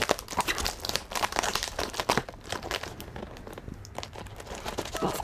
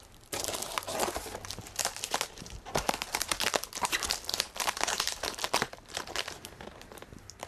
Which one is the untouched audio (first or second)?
first